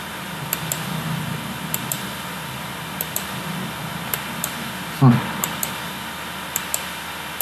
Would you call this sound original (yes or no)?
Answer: yes